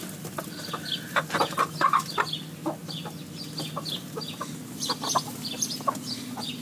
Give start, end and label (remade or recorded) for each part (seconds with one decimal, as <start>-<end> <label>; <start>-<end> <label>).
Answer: 0.0-6.6 recorded